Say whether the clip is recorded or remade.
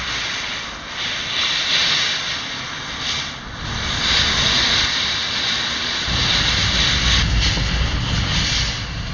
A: recorded